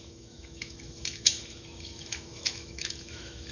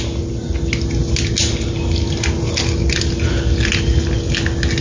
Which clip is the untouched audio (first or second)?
second